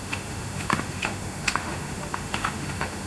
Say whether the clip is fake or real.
fake